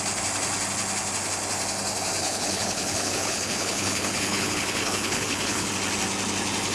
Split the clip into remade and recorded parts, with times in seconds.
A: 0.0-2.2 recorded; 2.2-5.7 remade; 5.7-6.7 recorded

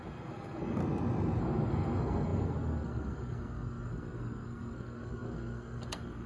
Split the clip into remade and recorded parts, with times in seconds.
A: 0.0-0.8 remade; 0.8-1.4 recorded; 1.4-6.3 remade

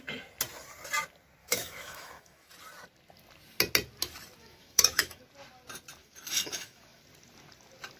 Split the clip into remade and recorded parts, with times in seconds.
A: 0.0-1.4 recorded; 1.4-2.5 remade; 2.5-4.4 recorded; 4.4-5.2 remade; 5.2-6.0 recorded; 6.0-7.0 remade; 7.0-8.0 recorded

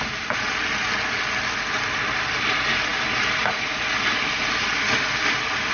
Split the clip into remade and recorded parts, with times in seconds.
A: 0.0-5.7 recorded

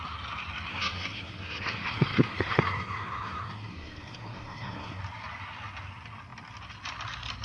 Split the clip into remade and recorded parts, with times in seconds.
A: 0.0-0.7 recorded; 0.7-5.0 remade; 5.0-7.4 recorded

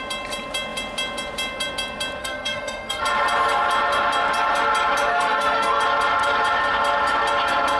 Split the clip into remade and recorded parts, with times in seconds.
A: 0.0-2.2 recorded; 2.2-3.0 remade; 3.0-5.1 recorded; 5.1-5.8 remade; 5.8-7.8 recorded

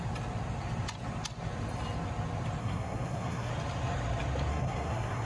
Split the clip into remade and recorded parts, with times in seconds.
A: 0.0-2.6 recorded; 2.6-3.5 remade; 3.5-4.5 recorded; 4.5-5.3 remade

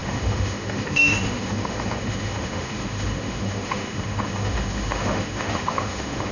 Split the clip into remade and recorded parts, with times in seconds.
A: 0.0-6.3 remade